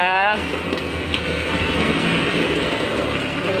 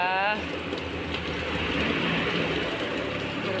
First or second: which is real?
second